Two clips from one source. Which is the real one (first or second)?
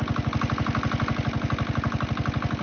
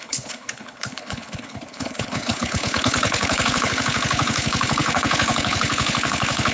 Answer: first